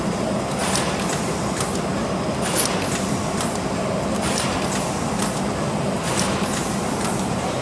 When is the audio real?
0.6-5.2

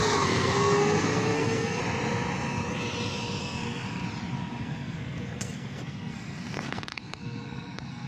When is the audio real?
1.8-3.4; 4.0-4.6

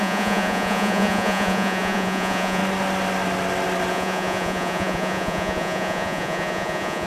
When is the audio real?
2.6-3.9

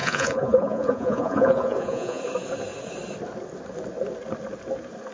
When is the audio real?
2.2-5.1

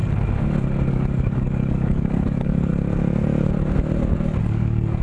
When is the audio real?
0.0-0.9; 2.7-4.4

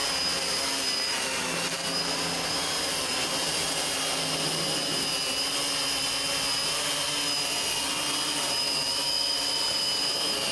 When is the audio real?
0.0-10.5

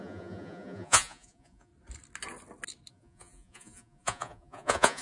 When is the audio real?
1.7-2.9

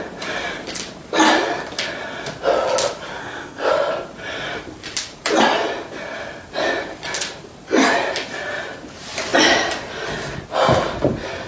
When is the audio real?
0.0-3.2; 3.7-11.5